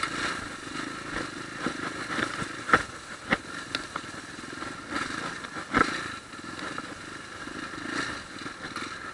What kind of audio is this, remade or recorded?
recorded